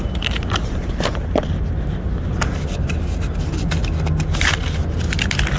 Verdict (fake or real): real